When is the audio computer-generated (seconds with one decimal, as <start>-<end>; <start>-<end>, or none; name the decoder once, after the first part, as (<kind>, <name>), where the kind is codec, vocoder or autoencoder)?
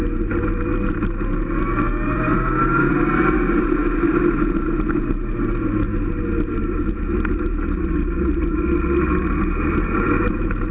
none